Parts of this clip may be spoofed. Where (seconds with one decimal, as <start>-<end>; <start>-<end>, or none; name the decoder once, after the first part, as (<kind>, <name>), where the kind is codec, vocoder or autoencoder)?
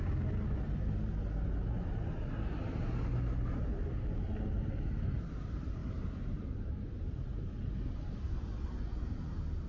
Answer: none